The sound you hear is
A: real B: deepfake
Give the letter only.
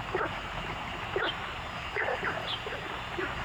A